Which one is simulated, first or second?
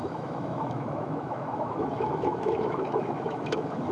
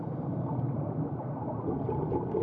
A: first